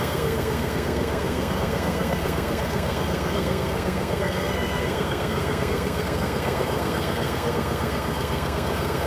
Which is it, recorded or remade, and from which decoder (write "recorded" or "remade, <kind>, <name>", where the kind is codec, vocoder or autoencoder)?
remade, codec, SNAC